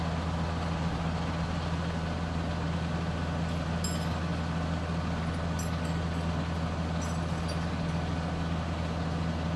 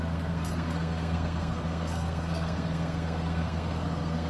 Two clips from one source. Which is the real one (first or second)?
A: first